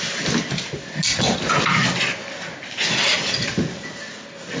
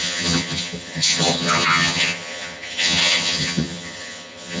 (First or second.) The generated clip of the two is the second